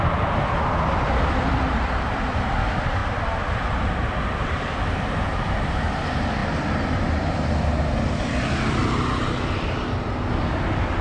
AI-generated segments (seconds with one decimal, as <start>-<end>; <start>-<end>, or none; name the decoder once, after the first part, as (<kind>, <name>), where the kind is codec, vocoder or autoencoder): 0.0-3.0 (vocoder, BigVGAN v2); 3.5-8.8; 10.4-11.0